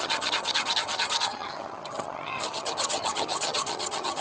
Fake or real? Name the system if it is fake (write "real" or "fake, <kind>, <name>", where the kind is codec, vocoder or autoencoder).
fake, vocoder, HiFi-GAN